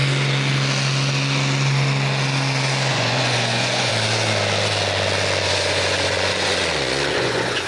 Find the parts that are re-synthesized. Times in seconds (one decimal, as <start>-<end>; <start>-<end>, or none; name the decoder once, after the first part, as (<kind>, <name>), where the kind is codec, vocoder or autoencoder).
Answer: 2.9-3.9 (vocoder, Vocos); 5.4-7.7